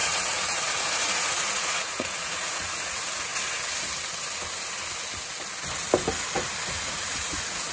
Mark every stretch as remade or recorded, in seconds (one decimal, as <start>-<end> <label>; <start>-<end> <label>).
0.0-3.3 remade; 3.3-6.7 recorded; 6.7-7.7 remade